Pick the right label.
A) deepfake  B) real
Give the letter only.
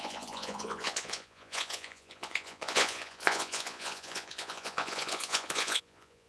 A